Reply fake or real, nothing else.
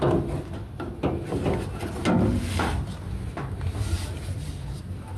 real